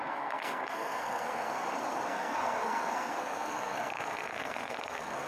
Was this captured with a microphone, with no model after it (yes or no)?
no